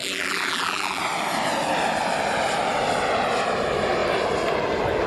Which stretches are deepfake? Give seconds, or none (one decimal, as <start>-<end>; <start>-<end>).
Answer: 0.0-1.0